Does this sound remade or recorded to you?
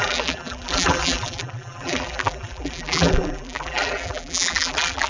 remade